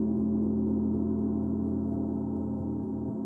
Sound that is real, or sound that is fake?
real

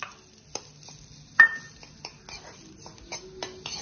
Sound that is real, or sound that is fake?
real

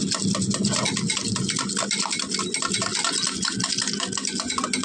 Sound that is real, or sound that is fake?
real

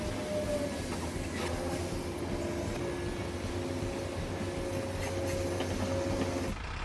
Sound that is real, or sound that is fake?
real